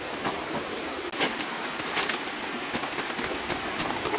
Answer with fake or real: real